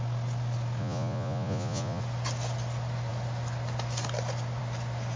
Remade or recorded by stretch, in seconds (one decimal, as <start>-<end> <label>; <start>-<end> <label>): 0.0-0.8 recorded; 0.8-2.0 remade; 2.0-5.2 recorded